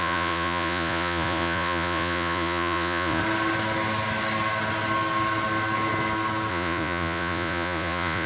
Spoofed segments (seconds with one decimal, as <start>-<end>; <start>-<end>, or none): 0.0-3.2; 6.5-8.3